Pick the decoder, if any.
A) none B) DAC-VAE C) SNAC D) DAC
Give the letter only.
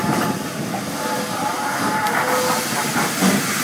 A